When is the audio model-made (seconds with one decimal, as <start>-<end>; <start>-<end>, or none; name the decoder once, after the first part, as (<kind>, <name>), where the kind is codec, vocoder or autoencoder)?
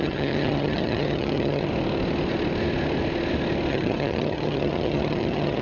0.0-1.7 (vocoder, HiFi-GAN); 3.7-5.6